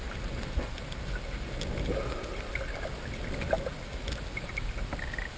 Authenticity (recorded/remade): recorded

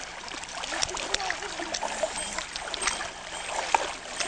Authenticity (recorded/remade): recorded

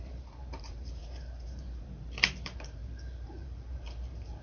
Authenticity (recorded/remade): remade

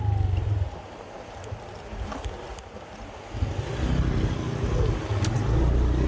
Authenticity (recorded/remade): recorded